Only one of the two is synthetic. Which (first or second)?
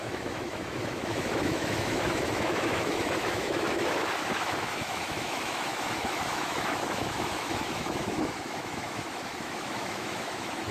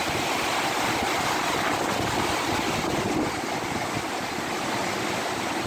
first